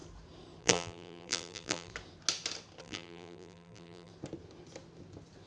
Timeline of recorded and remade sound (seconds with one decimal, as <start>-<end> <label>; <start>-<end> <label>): 0.0-0.6 recorded; 0.6-1.9 remade; 1.9-2.8 recorded; 2.8-4.1 remade; 4.1-5.5 recorded